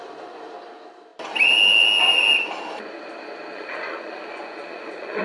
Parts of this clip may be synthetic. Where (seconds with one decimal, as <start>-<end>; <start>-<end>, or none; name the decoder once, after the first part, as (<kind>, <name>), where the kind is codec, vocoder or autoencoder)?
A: 3.5-5.2 (vocoder, Vocos)

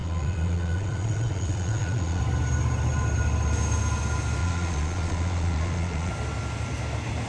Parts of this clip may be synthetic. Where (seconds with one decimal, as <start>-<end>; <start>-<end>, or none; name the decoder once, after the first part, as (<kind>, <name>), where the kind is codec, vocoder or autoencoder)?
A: 0.0-2.2 (vocoder, Vocos); 4.4-6.1